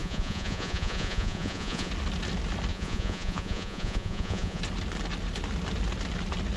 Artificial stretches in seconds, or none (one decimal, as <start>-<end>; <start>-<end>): 0.0-1.9; 2.7-4.6